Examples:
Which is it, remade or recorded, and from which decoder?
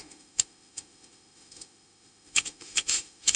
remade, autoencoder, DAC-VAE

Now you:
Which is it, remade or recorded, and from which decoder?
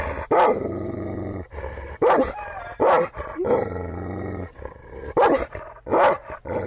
recorded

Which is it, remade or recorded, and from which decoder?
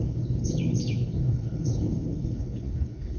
remade, codec, HILCodec